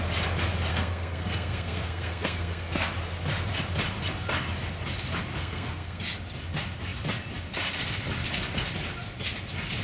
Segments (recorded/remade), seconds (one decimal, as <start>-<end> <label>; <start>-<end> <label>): 0.0-0.7 recorded; 0.7-2.9 remade; 2.9-5.4 recorded; 5.4-6.0 remade; 6.0-9.8 recorded

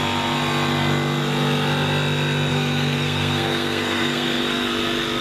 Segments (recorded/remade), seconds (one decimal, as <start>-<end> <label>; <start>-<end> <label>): 0.0-2.5 recorded; 2.5-4.7 remade; 4.7-5.2 recorded

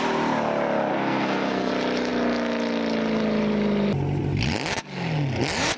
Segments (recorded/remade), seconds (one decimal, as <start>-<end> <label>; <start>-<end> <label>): 0.0-0.9 recorded; 0.9-1.7 remade; 1.7-5.8 recorded